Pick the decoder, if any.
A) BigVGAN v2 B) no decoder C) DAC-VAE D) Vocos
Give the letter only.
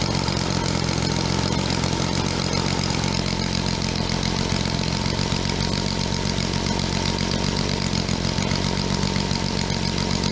B